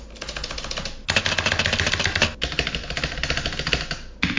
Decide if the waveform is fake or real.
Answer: real